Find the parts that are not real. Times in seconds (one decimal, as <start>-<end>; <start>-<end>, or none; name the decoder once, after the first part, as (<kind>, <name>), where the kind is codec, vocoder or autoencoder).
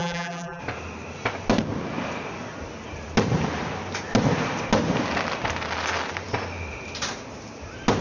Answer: 0.0-0.6 (vocoder, BigVGAN v2)